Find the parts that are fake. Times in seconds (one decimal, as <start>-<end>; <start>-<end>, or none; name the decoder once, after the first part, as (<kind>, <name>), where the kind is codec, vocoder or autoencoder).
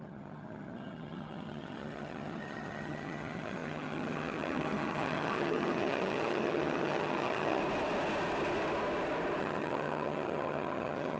0.0-7.6 (vocoder, HiFi-GAN); 9.4-11.2